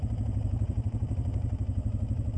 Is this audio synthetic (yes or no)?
yes